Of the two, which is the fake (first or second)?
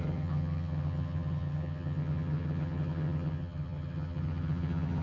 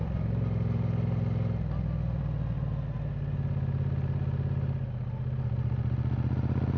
first